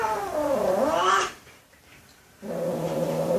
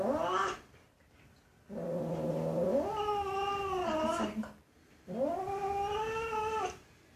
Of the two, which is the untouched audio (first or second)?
second